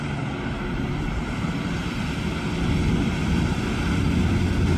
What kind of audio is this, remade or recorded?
recorded